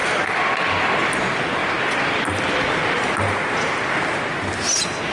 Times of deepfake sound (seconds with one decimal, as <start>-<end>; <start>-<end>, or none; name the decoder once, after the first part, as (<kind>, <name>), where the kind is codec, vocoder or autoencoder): none